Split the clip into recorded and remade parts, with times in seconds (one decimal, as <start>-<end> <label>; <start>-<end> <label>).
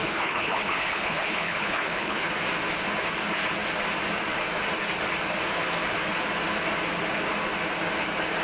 0.0-2.3 remade; 2.3-8.4 recorded